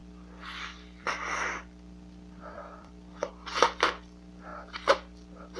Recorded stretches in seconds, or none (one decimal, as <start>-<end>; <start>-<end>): 3.3-4.5